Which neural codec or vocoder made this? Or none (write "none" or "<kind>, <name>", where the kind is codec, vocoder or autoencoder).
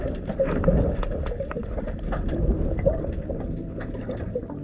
none